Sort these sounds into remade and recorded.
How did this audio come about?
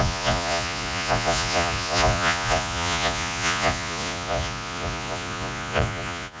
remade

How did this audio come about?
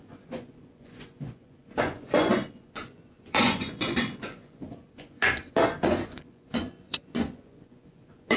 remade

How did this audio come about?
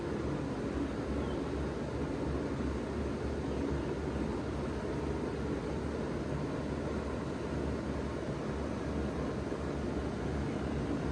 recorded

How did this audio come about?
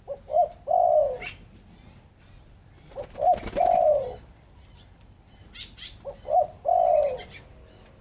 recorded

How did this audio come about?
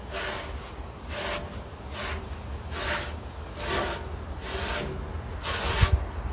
recorded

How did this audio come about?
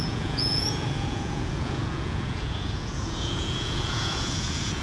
remade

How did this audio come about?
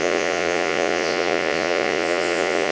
remade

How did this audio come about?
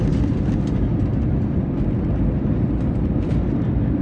recorded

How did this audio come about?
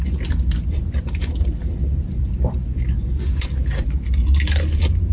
recorded